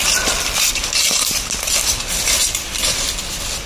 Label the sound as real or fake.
real